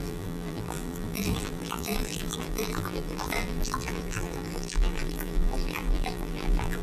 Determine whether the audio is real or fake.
fake